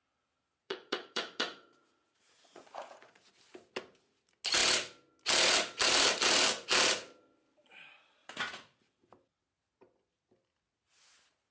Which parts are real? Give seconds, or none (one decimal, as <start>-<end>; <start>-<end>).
0.0-0.6; 3.3-8.2; 8.8-11.5